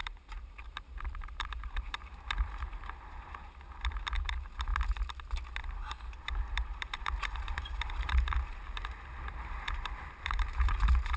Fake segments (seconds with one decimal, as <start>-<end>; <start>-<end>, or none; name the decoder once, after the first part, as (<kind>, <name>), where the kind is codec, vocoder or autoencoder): 0.0-4.7 (vocoder, BigVGAN v2); 6.2-11.2